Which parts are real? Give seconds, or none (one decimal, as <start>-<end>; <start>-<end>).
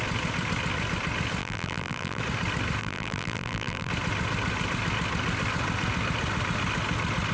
0.0-1.4; 2.2-2.8; 3.9-7.3